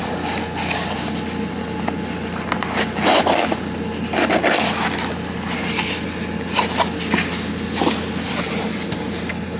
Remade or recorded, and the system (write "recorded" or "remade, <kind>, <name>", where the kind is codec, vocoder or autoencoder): recorded